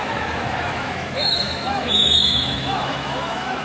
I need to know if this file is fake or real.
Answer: fake